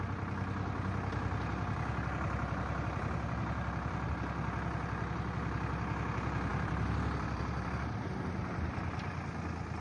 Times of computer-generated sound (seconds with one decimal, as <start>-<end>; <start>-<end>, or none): 6.5-9.1